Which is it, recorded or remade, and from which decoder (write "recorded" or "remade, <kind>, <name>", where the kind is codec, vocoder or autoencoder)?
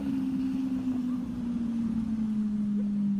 recorded